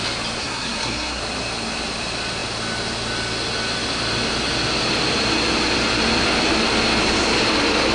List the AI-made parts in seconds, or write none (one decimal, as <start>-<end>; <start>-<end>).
0.4-1.2